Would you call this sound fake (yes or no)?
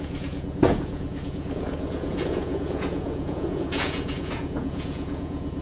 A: yes